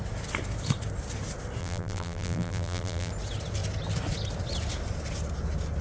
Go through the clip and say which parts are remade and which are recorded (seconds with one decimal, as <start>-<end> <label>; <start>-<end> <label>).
0.0-1.6 recorded; 1.6-3.1 remade; 3.1-5.8 recorded